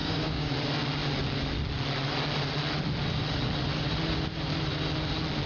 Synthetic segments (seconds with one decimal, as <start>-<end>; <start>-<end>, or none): 0.0-0.5